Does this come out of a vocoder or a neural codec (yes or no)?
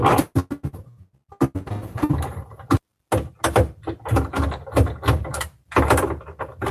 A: no